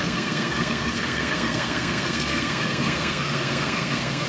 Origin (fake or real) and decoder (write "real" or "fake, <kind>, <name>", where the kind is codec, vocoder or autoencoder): fake, codec, SNAC